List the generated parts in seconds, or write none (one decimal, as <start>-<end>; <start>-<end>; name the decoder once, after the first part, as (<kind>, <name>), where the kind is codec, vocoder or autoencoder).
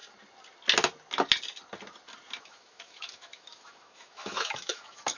2.4-5.2 (autoencoder, DAC-VAE)